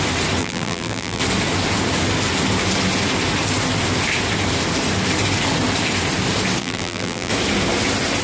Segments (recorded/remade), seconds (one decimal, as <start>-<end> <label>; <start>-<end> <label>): 0.0-0.4 recorded; 0.4-1.2 remade; 1.2-6.6 recorded; 6.6-7.3 remade; 7.3-8.2 recorded